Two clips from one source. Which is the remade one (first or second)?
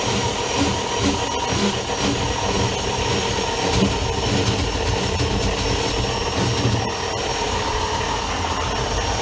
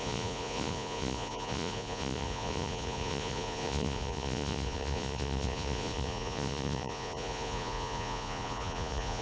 second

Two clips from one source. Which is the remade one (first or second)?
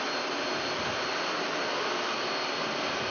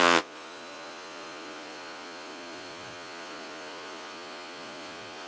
second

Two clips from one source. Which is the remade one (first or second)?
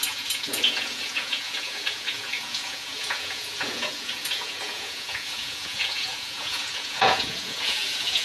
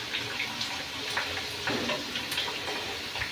first